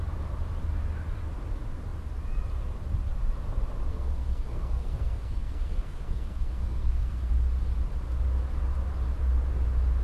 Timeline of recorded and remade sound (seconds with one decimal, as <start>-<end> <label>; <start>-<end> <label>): 0.0-3.9 recorded; 3.9-7.3 remade; 7.3-10.0 recorded